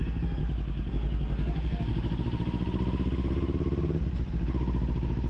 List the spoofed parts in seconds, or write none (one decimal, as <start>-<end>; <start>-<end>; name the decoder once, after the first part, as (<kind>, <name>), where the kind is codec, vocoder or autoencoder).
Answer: 0.0-0.4 (codec, SNAC); 0.9-1.9